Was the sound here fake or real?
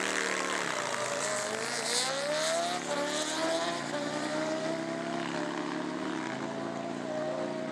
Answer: real